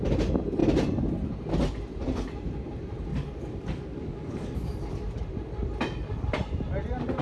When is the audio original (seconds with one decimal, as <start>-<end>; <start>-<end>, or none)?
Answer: 0.0-3.1; 4.8-7.2